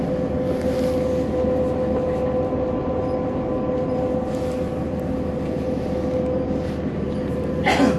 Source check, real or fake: real